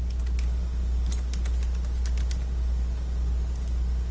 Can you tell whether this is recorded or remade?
recorded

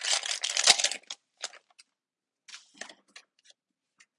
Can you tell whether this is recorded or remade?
recorded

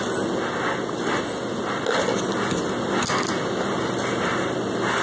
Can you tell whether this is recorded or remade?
recorded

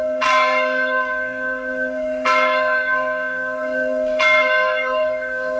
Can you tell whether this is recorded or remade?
remade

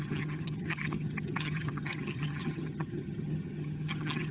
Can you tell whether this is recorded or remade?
remade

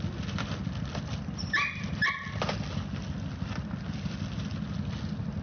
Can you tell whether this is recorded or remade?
recorded